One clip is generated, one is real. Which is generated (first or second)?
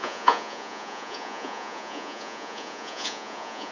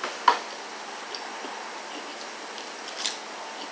first